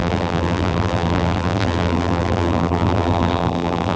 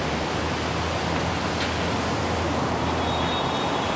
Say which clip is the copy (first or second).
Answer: first